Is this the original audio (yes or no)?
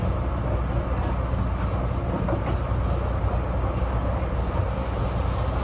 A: yes